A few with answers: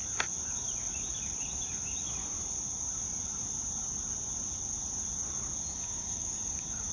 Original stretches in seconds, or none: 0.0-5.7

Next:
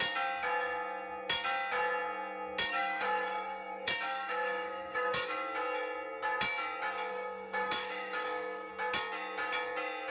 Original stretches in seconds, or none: 0.0-2.7; 5.3-7.1; 8.7-10.1

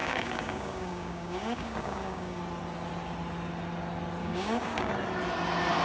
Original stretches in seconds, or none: 2.4-4.2; 4.9-5.8

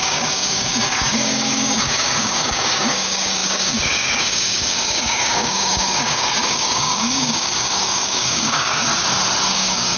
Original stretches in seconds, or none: 8.9-9.5

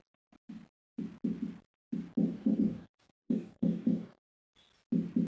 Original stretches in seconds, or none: 0.0-2.3; 4.3-5.3

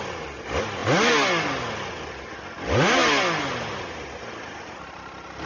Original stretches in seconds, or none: 0.0-5.5

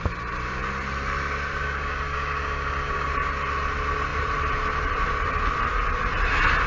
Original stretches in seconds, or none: 0.0-1.6; 3.1-6.7

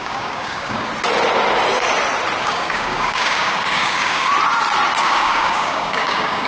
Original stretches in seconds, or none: 0.9-2.4; 4.3-5.0